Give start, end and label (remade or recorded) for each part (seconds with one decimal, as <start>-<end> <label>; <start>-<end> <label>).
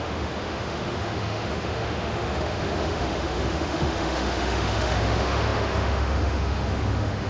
0.0-7.3 remade